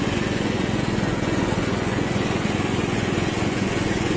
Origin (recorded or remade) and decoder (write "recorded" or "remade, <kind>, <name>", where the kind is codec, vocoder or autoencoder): remade, vocoder, Vocos